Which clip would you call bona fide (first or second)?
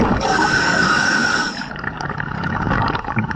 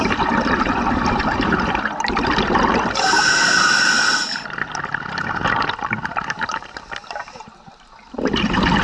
second